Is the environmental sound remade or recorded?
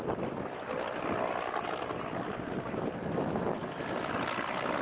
recorded